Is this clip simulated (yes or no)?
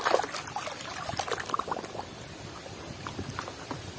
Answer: no